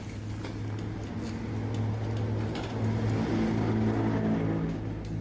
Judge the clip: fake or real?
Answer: real